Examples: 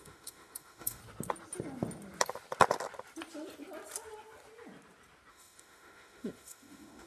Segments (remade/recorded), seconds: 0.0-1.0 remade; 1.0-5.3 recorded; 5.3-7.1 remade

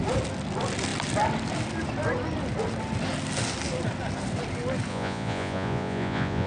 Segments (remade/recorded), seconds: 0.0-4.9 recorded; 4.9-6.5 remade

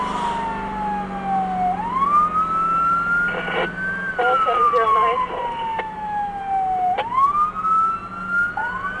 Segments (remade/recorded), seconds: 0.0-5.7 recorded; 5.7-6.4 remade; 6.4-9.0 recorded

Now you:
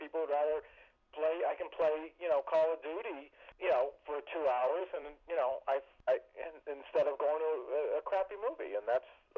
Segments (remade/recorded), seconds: 0.0-4.6 recorded; 4.6-5.5 remade; 5.5-9.4 recorded

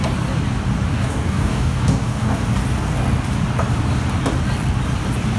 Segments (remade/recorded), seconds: 0.0-0.9 recorded; 0.9-2.4 remade; 2.4-5.4 recorded

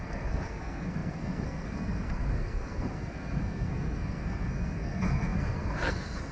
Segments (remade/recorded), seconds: 0.0-6.3 remade

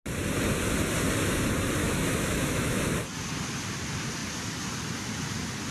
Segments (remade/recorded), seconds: 0.0-1.8 recorded; 1.8-2.8 remade; 2.8-5.7 recorded

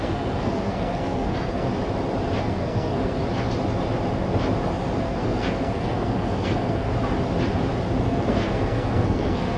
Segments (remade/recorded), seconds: 0.0-1.7 remade; 1.7-2.4 recorded; 2.4-3.2 remade; 3.2-5.0 recorded; 5.0-6.9 remade; 6.9-8.0 recorded; 8.0-9.6 remade